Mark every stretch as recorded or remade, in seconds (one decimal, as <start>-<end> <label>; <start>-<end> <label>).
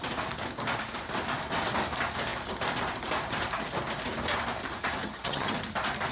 0.0-5.0 recorded; 5.0-5.6 remade; 5.6-6.1 recorded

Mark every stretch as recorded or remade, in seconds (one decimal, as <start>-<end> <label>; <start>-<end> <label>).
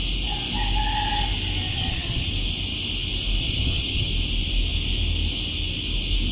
0.0-1.7 recorded; 1.7-2.3 remade; 2.3-3.4 recorded; 3.4-4.1 remade; 4.1-6.3 recorded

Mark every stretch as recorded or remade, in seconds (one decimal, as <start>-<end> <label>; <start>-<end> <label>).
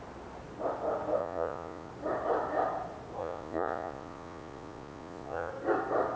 0.0-1.2 recorded; 1.2-1.9 remade; 1.9-3.2 recorded; 3.2-5.5 remade; 5.5-6.2 recorded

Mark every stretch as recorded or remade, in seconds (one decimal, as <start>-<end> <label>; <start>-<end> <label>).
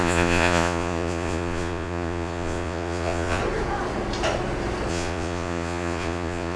0.0-3.4 remade; 3.4-4.9 recorded; 4.9-6.6 remade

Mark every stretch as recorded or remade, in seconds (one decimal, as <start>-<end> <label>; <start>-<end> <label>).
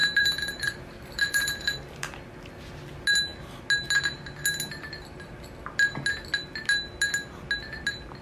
0.0-2.0 remade; 2.0-8.2 recorded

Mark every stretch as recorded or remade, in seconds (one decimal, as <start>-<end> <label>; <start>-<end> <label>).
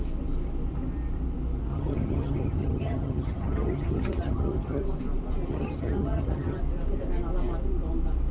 0.0-1.7 recorded; 1.7-4.8 remade; 4.8-5.5 recorded; 5.5-6.6 remade; 6.6-8.3 recorded